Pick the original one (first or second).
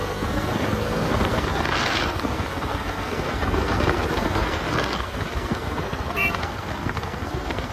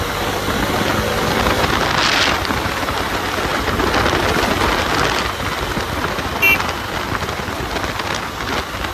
second